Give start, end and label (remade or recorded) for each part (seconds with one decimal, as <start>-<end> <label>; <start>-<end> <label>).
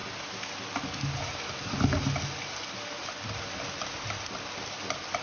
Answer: 0.0-5.2 recorded